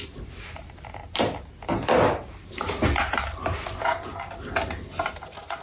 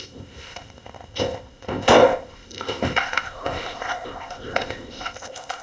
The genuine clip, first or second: first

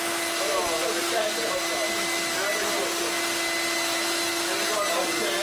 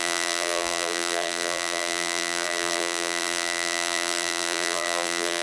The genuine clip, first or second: first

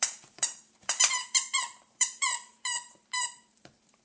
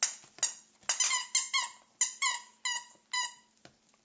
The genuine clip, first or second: second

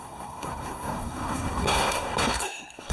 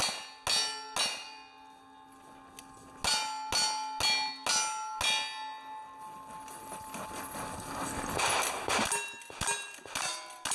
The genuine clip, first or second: second